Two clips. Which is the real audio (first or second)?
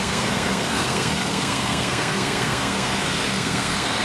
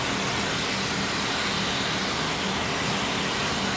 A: second